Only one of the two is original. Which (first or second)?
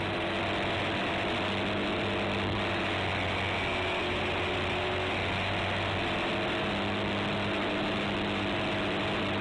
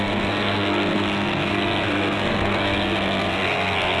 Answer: first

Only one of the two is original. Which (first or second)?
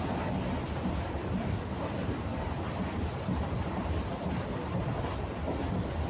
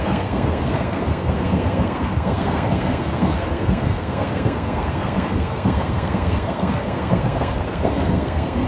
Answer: first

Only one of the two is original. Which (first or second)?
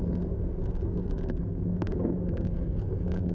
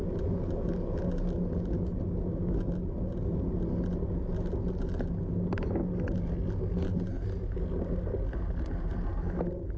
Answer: second